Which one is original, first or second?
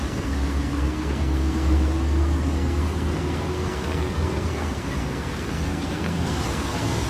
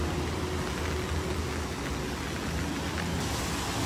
second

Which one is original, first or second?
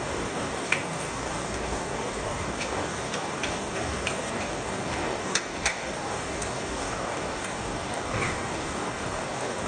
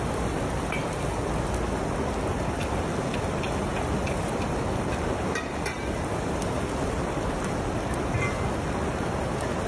second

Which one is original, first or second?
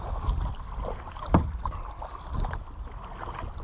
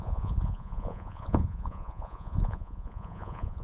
first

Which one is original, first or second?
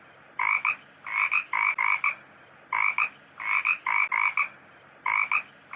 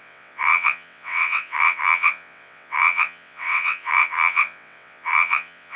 first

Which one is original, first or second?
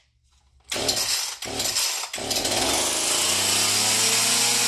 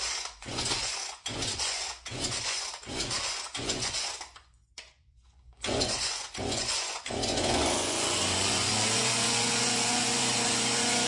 first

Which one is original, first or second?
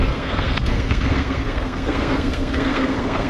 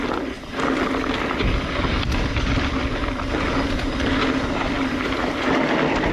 second